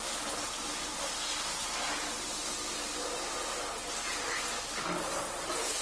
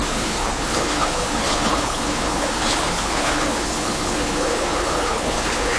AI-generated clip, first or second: second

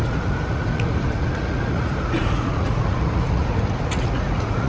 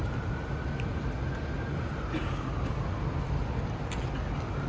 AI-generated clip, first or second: first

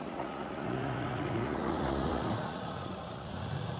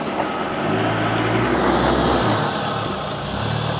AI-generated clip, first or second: first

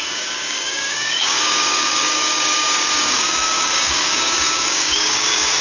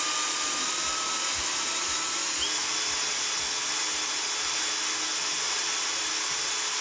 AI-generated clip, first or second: first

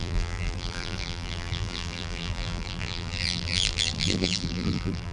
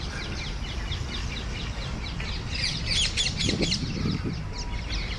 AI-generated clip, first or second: first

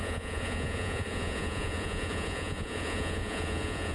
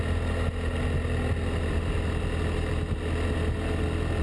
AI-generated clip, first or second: first